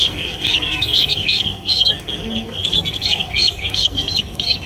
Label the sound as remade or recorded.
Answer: remade